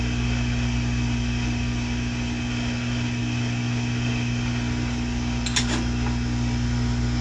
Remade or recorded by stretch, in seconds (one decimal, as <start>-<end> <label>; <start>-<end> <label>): 0.0-7.2 recorded

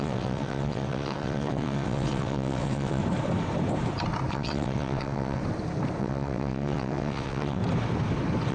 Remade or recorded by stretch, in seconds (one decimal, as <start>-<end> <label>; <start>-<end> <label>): 0.0-3.0 remade; 3.0-4.3 recorded; 4.3-5.4 remade; 5.4-6.0 recorded; 6.0-7.6 remade; 7.6-8.5 recorded

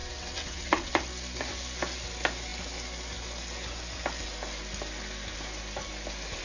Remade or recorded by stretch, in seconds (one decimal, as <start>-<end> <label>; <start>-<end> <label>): 0.0-0.9 remade; 0.9-6.4 recorded

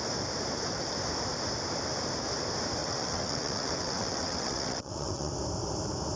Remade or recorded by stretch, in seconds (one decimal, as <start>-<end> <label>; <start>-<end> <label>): 0.0-2.8 recorded; 2.8-5.3 remade; 5.3-6.2 recorded

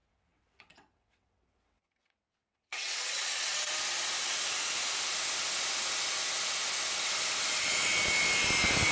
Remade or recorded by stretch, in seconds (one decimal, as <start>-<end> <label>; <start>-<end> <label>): 0.0-3.7 remade; 3.7-8.9 recorded